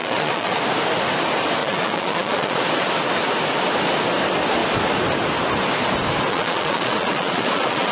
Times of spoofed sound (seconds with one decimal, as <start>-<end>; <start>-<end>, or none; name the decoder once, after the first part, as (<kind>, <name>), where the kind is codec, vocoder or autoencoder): 0.0-0.6 (vocoder, Vocos); 1.6-2.6; 6.3-7.9